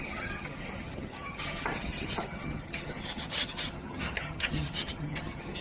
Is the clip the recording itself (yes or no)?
no